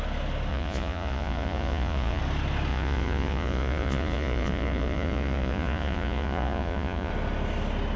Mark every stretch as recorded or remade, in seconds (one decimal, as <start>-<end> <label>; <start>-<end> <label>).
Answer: 0.0-0.5 recorded; 0.5-2.2 remade; 2.2-2.7 recorded; 2.7-7.1 remade; 7.1-8.0 recorded